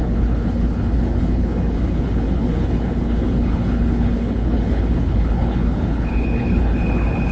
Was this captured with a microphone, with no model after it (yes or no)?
no